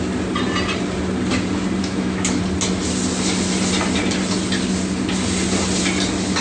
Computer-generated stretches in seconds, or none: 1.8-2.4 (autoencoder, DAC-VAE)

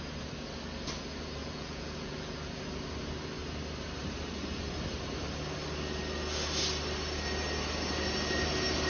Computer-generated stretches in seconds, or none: 1.4-2.6 (vocoder, Vocos)

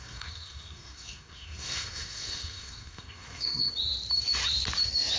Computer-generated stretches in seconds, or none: 0.0-3.7 (codec, SNAC)

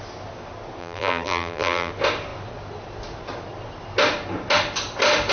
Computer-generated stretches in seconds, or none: 0.8-1.9 (vocoder, BigVGAN v2)

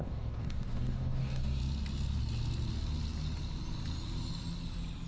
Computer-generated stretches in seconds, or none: 0.0-1.6 (codec, DAC)